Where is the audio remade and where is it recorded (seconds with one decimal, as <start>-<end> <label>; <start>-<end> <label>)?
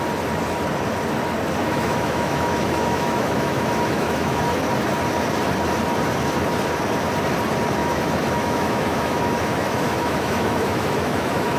0.0-1.6 recorded; 1.6-4.4 remade; 4.4-7.8 recorded; 7.8-11.6 remade